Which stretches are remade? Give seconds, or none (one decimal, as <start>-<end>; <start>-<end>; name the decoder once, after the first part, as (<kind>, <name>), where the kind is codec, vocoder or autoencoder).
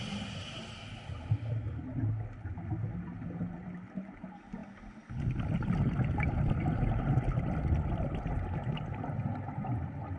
none